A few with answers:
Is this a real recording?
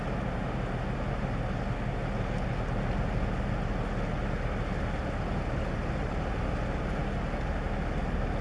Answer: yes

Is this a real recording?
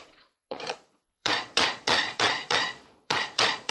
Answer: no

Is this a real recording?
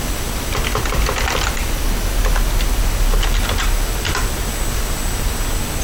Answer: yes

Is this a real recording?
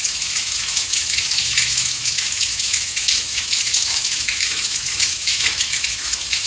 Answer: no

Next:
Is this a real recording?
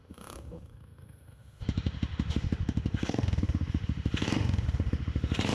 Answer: no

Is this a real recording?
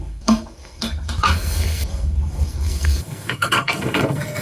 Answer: no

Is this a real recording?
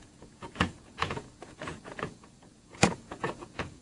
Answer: no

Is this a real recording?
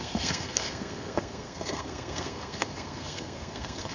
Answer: no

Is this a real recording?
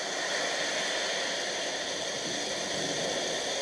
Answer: yes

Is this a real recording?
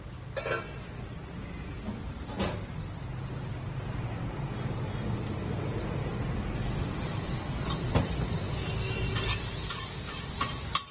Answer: yes